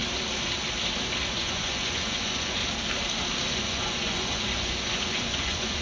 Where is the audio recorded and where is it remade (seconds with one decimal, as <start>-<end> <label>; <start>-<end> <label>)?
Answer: 0.0-1.3 recorded; 1.3-2.6 remade; 2.6-3.5 recorded; 3.5-5.8 remade